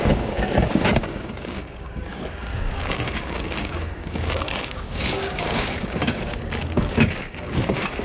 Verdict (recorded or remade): remade